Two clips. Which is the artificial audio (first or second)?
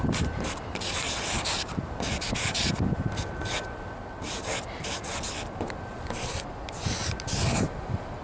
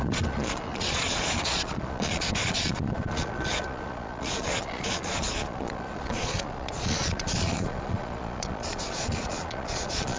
second